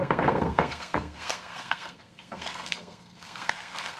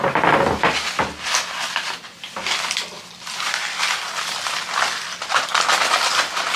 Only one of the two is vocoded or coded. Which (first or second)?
first